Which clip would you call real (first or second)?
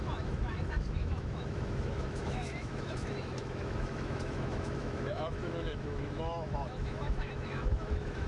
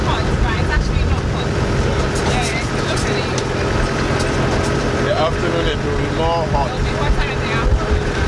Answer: second